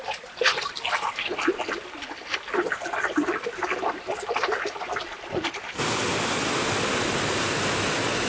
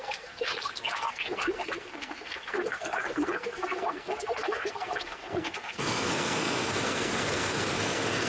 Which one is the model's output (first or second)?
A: second